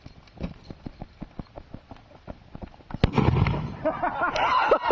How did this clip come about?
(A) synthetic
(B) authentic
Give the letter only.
B